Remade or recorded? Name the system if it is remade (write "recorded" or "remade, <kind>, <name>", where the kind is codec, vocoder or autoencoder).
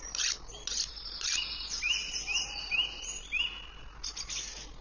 recorded